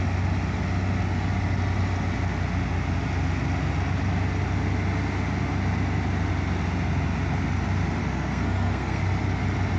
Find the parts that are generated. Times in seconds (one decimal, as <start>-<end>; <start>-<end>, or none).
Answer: 8.0-9.0